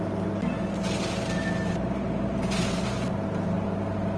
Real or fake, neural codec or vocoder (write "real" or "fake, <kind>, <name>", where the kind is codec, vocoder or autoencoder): real